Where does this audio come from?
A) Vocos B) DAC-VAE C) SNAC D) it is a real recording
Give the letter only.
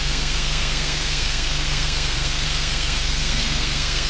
C